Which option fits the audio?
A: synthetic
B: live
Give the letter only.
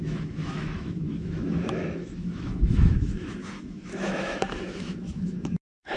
A